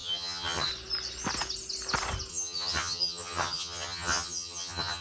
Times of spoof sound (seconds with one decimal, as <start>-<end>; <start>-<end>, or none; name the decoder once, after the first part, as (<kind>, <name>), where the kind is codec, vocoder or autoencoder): 0.0-0.7 (vocoder, HiFi-GAN); 2.3-5.0